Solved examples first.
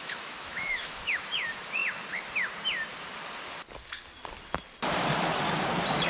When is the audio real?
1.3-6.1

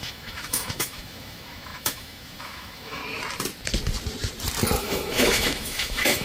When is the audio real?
3.0-4.8

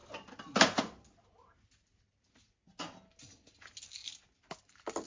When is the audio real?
0.0-5.1

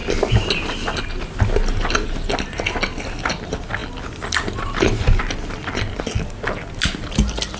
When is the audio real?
0.0-7.6

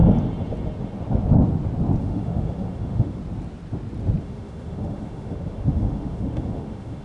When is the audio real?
0.0-2.0; 3.2-4.2